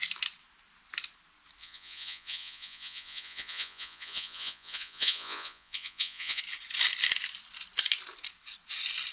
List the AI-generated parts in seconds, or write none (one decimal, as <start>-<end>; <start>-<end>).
1.6-6.4